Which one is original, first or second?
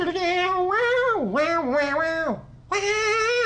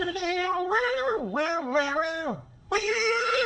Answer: first